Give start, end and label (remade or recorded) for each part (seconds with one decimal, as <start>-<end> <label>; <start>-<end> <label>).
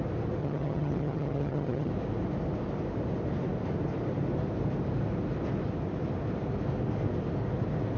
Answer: 0.0-0.4 recorded; 0.4-1.9 remade; 1.9-8.0 recorded